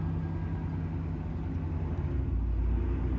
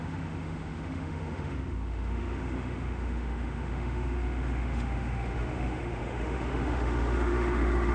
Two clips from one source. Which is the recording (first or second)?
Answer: first